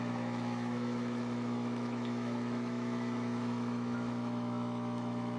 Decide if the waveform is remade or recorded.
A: remade